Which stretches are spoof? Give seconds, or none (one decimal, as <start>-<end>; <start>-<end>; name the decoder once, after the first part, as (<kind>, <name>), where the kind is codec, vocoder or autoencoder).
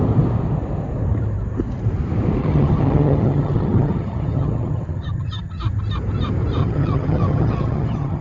2.4-5.6 (vocoder, HiFi-GAN); 6.6-8.2